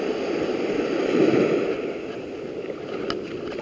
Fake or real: real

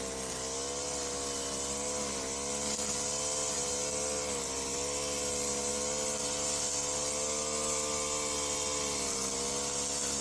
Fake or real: real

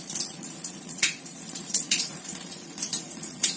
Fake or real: fake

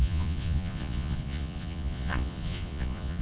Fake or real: fake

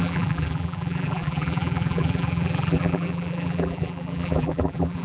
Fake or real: fake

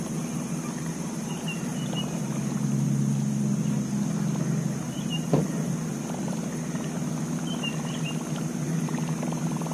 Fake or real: real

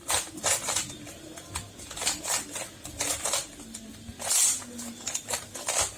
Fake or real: real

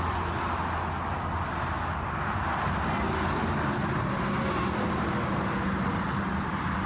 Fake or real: real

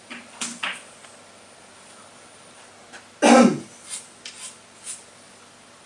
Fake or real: real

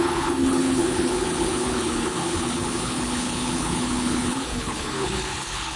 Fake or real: fake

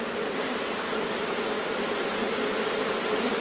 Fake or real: real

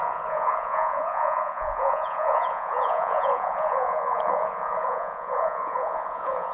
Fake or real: fake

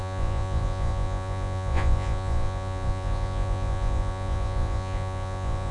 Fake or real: fake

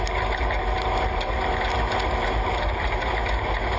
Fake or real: real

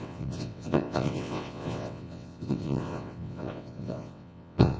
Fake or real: fake